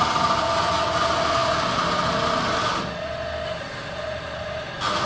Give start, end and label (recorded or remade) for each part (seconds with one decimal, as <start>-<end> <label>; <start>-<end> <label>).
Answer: 0.0-5.0 recorded